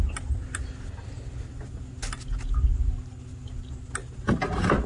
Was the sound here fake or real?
real